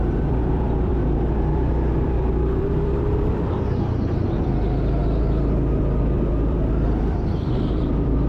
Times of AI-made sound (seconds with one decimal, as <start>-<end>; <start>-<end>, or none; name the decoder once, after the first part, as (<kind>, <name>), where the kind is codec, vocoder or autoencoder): 0.0-0.9 (vocoder, BigVGAN v2); 2.6-5.0; 6.0-8.3